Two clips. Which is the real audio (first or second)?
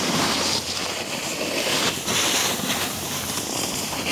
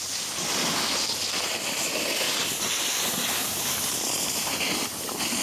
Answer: second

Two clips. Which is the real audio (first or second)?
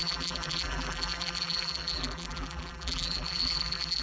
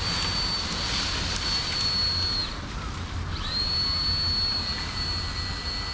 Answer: second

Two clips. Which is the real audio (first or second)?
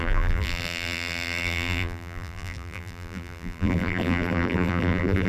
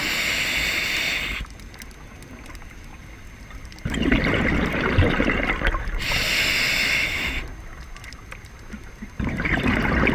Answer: second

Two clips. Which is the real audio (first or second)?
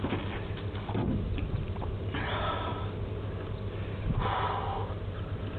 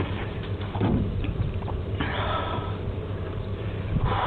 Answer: first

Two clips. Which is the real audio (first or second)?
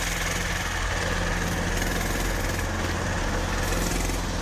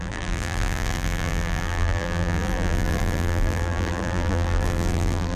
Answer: first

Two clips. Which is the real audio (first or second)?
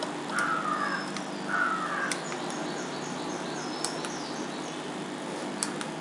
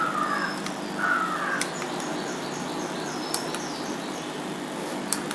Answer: first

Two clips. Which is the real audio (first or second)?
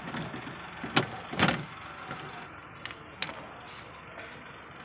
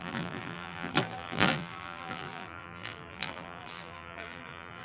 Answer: first